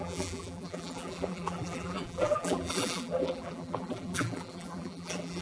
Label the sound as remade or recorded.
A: remade